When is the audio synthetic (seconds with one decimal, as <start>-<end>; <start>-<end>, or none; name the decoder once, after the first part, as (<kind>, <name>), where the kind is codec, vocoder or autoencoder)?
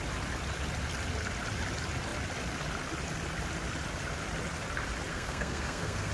5.1-6.1 (codec, SNAC)